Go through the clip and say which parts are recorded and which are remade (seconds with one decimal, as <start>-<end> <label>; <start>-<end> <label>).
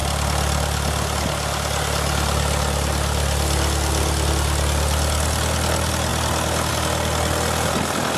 0.0-8.2 recorded